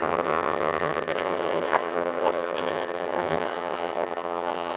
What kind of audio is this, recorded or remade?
remade